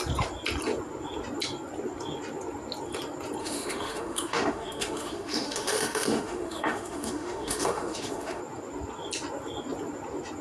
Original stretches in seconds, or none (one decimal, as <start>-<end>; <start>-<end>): 0.0-3.4; 8.4-10.4